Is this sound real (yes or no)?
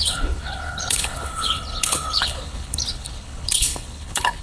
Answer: no